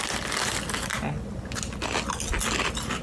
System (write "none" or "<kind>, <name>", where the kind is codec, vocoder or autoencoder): none